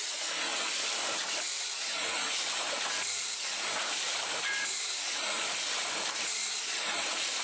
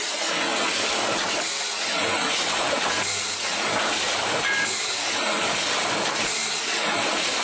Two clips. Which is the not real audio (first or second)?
first